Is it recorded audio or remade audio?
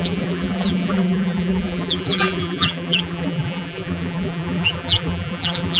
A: remade